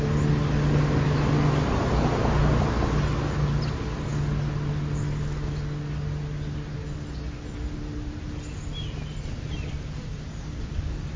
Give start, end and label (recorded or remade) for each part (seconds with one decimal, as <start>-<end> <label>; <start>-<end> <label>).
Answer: 0.0-11.2 recorded